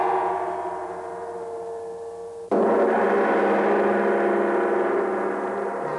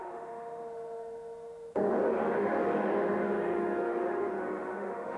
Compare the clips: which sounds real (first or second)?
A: first